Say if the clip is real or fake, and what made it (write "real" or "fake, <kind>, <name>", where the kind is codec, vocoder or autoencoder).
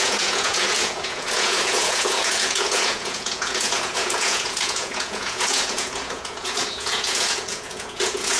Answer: fake, vocoder, Vocos